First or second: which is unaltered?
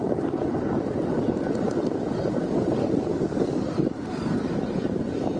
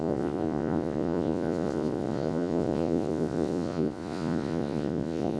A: first